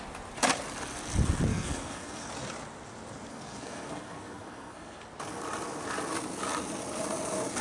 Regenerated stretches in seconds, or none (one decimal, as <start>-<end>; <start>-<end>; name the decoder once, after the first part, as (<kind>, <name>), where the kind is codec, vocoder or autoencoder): 1.5-2.3 (codec, SNAC); 3.3-5.0